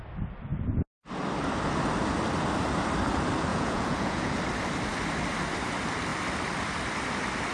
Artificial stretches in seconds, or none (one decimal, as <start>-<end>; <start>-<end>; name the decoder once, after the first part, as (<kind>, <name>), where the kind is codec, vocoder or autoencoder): 3.5-4.4 (vocoder, Vocos)